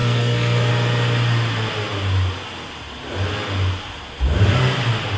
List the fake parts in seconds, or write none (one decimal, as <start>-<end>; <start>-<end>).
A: 0.0-0.7